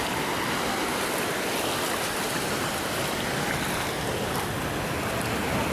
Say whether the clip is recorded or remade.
recorded